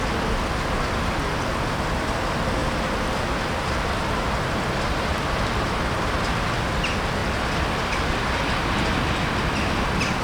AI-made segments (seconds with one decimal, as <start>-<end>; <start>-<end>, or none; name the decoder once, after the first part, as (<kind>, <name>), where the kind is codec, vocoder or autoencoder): none